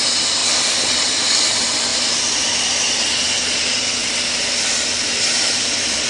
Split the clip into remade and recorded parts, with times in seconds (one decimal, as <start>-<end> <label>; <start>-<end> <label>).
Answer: 0.0-0.4 recorded; 0.4-1.3 remade; 1.3-1.9 recorded; 1.9-3.2 remade; 3.2-4.0 recorded; 4.0-6.1 remade